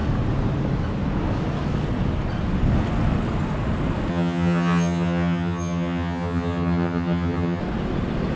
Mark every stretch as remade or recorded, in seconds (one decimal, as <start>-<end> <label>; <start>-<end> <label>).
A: 0.0-4.1 recorded; 4.1-7.6 remade; 7.6-8.4 recorded